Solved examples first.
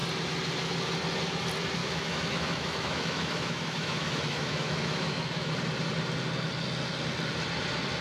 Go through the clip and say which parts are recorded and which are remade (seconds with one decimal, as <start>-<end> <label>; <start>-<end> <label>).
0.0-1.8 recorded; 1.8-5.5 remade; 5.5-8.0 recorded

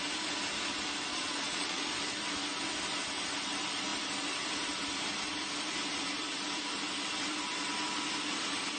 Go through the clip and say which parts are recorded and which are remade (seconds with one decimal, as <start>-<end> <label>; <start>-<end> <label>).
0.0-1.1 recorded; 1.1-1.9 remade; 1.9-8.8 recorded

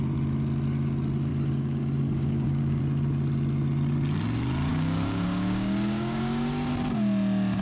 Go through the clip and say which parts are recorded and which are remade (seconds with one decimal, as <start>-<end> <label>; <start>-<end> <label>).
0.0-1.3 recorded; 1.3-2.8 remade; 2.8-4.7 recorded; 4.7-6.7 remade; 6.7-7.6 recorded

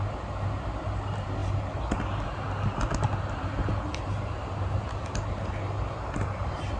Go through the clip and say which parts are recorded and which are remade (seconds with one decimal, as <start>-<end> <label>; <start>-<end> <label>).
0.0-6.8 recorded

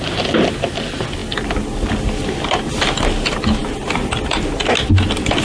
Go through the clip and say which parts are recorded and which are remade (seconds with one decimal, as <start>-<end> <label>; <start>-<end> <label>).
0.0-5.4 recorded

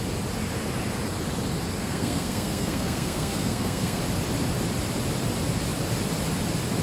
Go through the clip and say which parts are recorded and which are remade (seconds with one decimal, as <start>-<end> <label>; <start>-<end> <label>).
0.0-1.8 recorded; 1.8-4.0 remade; 4.0-6.8 recorded

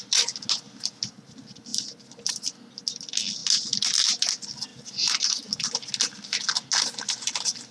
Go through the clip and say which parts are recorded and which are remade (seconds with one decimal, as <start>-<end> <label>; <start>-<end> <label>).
0.0-7.7 recorded

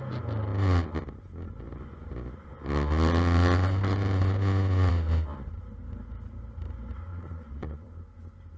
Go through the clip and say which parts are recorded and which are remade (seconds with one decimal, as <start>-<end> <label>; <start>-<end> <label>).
0.0-7.1 recorded; 7.1-7.9 remade; 7.9-8.6 recorded